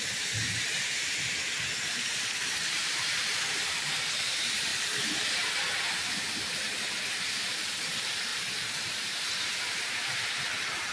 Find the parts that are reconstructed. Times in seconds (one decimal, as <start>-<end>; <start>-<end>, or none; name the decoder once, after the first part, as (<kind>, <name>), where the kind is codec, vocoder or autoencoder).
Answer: 0.0-10.9 (vocoder, BigVGAN v2)